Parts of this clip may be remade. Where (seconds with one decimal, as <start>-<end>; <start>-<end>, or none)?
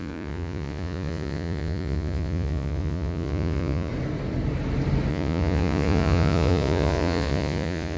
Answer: 0.0-3.9; 5.1-8.0